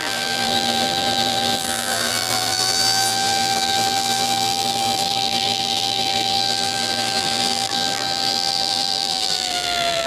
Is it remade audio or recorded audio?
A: remade